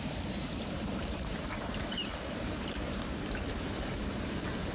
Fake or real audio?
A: fake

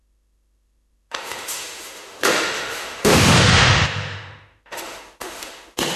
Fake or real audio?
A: fake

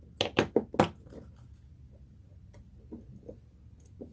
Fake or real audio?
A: real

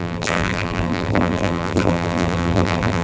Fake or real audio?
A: fake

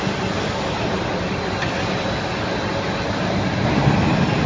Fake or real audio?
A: real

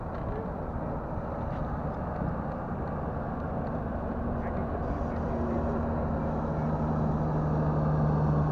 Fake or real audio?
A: real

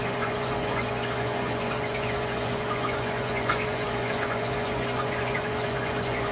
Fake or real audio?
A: fake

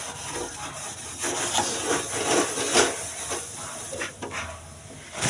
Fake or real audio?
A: real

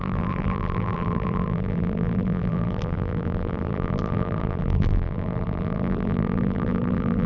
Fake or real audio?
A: fake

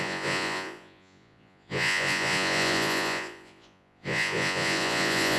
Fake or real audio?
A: fake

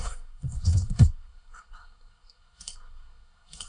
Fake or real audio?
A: fake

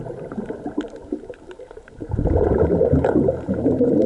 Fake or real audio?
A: fake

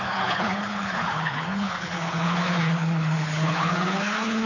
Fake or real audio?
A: fake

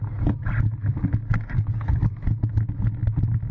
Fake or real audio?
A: real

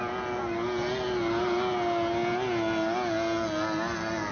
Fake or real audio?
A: real